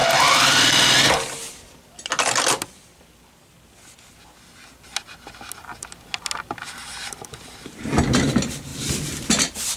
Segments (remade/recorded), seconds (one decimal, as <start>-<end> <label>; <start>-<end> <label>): 0.0-6.8 recorded; 6.8-7.9 remade; 7.9-8.7 recorded; 8.7-9.8 remade